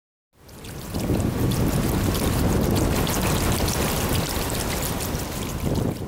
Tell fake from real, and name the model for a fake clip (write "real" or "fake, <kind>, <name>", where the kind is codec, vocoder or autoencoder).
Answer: real